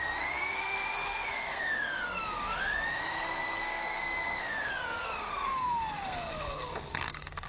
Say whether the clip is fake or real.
fake